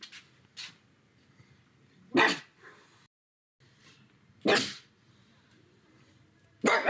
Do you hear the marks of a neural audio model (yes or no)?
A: no